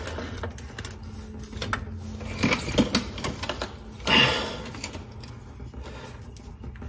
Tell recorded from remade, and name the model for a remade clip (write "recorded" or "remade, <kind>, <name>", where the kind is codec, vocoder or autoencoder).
recorded